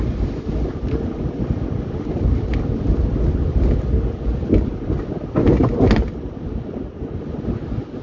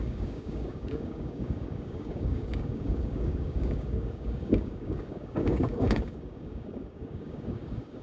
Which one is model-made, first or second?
second